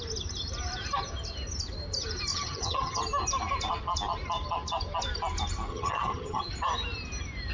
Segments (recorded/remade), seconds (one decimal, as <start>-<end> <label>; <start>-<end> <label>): 0.0-2.3 recorded; 2.3-3.0 remade; 3.0-5.7 recorded; 5.7-6.5 remade; 6.5-7.5 recorded